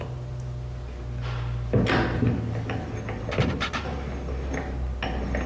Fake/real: real